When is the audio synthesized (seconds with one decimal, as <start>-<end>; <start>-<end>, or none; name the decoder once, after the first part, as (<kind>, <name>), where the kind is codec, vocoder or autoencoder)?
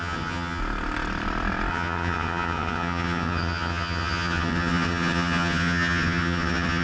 0.0-0.6 (vocoder, HiFi-GAN); 1.7-6.8